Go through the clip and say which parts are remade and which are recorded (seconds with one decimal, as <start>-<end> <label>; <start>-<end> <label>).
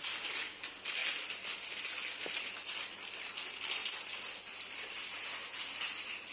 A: 0.0-6.3 recorded